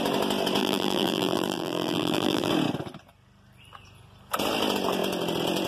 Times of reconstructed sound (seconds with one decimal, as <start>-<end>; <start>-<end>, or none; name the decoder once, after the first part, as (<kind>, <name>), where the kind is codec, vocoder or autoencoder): 0.6-2.5 (vocoder, BigVGAN v2)